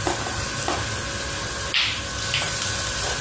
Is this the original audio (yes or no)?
yes